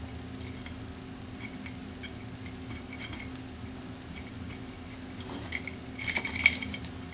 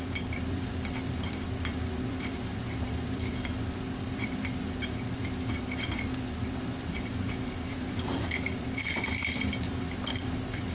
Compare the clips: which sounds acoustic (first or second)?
first